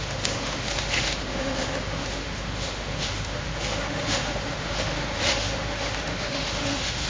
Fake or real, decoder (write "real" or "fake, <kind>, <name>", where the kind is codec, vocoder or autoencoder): fake, autoencoder, DAC-VAE